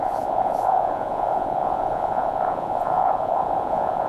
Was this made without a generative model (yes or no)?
no